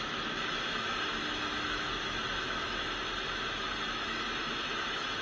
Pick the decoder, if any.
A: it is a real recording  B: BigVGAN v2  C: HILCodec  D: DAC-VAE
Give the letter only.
D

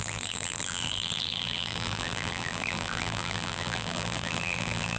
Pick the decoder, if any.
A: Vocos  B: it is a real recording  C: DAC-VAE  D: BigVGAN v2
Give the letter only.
D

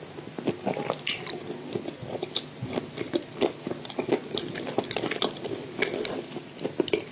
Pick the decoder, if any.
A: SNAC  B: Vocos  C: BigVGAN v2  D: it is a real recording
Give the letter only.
D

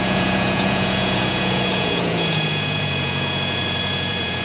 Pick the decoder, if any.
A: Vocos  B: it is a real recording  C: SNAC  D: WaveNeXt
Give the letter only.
A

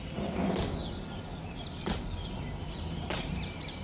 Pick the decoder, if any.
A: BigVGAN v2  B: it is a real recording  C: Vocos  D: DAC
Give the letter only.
B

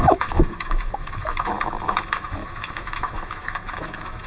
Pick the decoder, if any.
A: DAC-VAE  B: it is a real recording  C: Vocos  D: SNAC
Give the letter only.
A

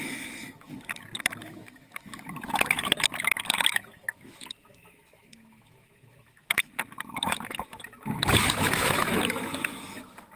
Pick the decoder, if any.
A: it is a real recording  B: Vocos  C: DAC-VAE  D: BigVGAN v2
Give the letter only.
C